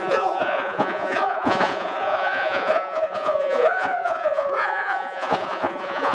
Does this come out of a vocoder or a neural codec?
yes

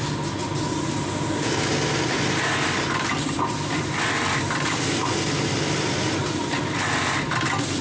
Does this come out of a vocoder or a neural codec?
no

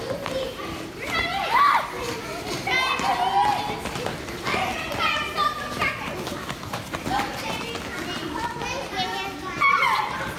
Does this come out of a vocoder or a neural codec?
no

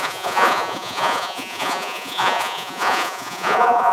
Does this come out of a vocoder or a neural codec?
yes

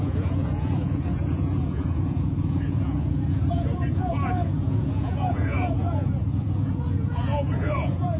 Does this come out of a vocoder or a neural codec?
yes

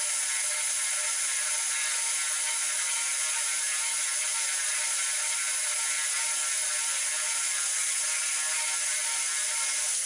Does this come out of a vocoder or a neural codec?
no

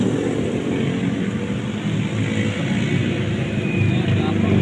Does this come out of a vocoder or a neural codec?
no